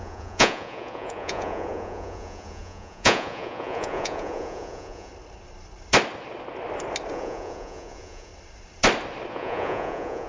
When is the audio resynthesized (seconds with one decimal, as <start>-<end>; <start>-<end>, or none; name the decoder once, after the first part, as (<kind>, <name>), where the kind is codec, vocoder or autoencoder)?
0.0-5.1 (vocoder, Vocos); 7.1-8.3; 9.3-10.3